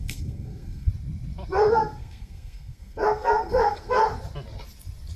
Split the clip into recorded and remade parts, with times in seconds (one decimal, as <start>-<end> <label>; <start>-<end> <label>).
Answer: 0.0-0.9 remade; 0.9-1.7 recorded; 1.7-4.0 remade; 4.0-5.2 recorded